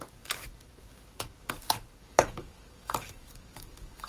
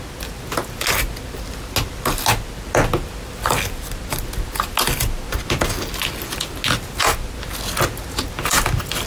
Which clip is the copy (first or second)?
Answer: first